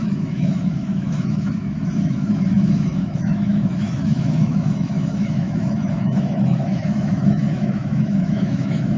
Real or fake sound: fake